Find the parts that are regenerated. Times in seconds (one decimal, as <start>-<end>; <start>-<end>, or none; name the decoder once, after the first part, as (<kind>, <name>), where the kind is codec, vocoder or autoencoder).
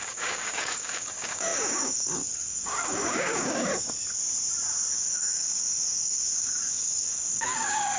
0.0-3.7 (codec, DAC); 4.9-8.0